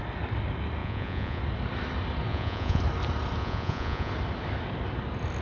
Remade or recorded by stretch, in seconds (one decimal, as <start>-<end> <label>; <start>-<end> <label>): 0.0-0.8 recorded; 0.8-1.4 remade; 1.4-2.3 recorded; 2.3-2.8 remade; 2.8-3.4 recorded; 3.4-4.1 remade; 4.1-5.4 recorded